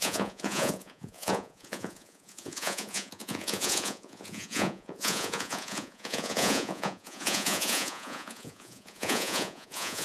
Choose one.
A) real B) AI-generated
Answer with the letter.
B